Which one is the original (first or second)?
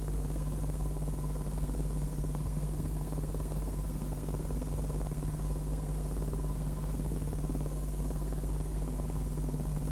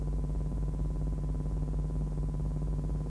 second